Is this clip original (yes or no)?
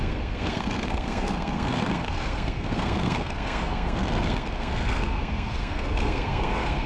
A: no